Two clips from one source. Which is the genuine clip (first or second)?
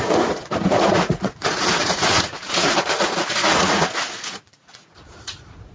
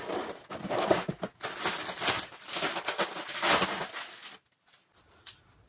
second